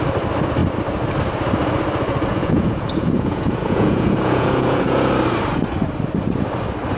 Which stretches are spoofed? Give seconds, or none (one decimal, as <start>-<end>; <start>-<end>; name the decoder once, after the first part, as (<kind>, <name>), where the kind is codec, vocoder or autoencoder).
2.3-5.1 (vocoder, Vocos)